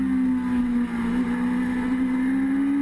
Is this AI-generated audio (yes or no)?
no